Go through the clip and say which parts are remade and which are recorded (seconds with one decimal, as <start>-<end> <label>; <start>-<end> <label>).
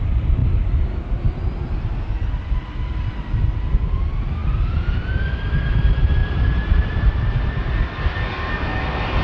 0.0-6.2 recorded; 6.2-7.3 remade; 7.3-9.2 recorded